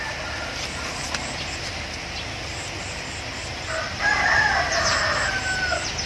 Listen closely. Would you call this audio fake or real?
real